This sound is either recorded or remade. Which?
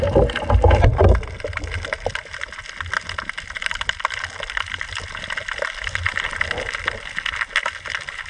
recorded